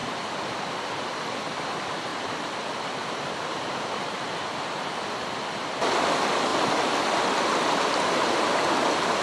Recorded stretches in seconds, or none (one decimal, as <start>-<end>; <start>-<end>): 0.0-1.0; 2.1-2.6; 3.0-3.9; 6.5-9.2

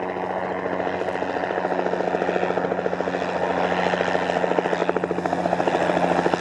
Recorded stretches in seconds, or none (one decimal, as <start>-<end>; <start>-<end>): 0.0-6.4

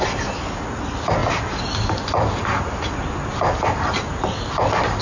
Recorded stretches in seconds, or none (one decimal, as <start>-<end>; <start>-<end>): 0.0-5.0

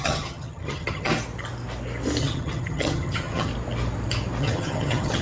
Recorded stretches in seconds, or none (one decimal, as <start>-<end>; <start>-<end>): 1.1-2.2; 3.5-4.4

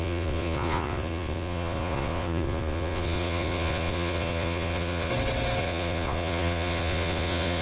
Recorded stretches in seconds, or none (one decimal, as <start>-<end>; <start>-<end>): 5.1-5.6

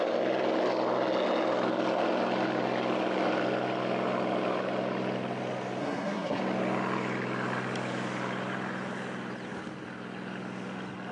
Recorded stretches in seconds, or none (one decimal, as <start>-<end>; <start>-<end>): 0.0-5.8; 6.4-11.1